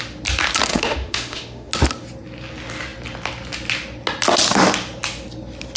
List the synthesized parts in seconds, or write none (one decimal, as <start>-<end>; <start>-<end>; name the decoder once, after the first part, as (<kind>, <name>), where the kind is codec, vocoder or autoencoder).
0.7-1.7 (autoencoder, DAC-VAE)